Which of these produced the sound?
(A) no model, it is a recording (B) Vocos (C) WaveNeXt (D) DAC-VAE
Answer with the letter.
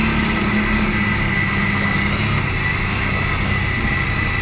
A